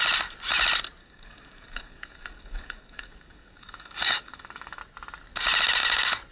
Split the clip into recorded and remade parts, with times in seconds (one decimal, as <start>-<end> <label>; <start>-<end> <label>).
0.0-1.0 recorded; 1.0-4.8 remade; 4.8-6.3 recorded